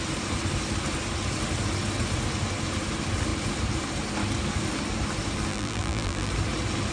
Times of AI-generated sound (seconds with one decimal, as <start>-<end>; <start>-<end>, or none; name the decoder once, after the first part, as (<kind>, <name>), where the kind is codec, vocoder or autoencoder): 5.5-6.3 (vocoder, BigVGAN v2)